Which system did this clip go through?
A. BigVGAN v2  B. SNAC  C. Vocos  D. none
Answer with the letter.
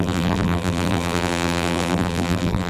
A